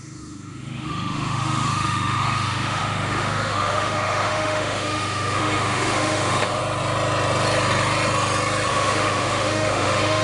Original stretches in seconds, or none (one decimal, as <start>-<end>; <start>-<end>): 6.6-8.7